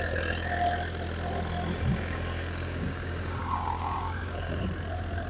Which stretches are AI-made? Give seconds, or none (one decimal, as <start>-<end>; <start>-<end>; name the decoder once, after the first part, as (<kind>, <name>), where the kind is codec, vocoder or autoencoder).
1.9-4.6 (codec, DAC)